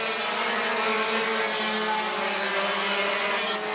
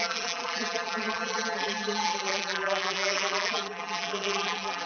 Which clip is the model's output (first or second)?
second